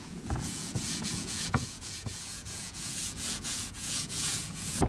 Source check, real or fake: fake